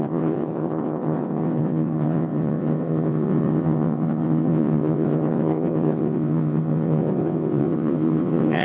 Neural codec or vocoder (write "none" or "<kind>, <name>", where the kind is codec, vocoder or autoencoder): vocoder, WaveNeXt